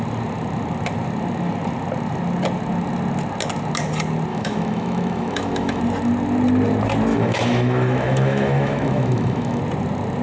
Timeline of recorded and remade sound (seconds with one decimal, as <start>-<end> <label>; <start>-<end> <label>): 0.0-4.3 recorded; 4.3-5.8 remade; 5.8-7.1 recorded; 7.1-9.6 remade; 9.6-10.2 recorded